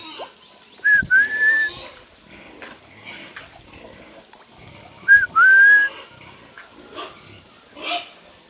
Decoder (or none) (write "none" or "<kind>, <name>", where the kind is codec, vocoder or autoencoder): none